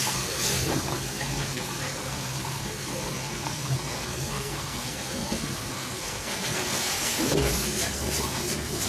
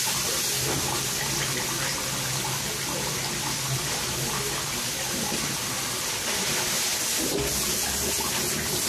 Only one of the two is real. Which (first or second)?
second